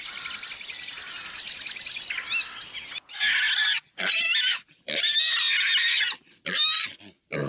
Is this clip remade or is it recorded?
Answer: recorded